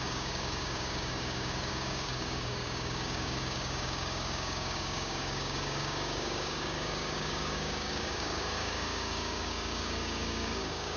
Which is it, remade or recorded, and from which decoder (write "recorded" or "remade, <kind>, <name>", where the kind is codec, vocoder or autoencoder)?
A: remade, codec, DAC